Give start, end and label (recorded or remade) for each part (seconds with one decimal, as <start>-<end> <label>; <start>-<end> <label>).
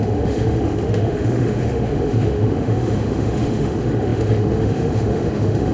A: 0.0-5.7 remade